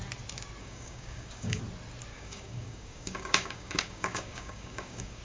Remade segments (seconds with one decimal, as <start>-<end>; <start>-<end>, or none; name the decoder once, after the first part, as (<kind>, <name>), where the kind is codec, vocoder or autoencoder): 0.6-1.6 (codec, DAC); 2.1-5.2

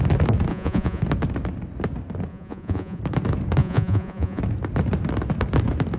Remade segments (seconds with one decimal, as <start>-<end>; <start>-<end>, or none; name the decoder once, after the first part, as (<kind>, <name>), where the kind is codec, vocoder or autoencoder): 0.5-1.0 (vocoder, Vocos); 2.3-3.0; 3.6-4.4

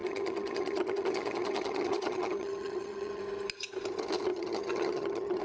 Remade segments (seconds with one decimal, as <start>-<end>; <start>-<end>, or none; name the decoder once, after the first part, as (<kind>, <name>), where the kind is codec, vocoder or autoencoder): 0.0-3.2 (vocoder, HiFi-GAN); 4.3-5.4

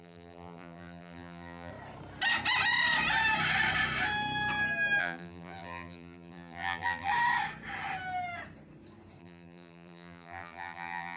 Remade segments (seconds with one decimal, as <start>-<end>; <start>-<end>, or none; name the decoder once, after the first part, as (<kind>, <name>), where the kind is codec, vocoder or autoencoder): 0.0-1.7 (vocoder, BigVGAN v2); 5.0-7.1; 9.2-11.2